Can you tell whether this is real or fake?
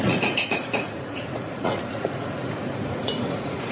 fake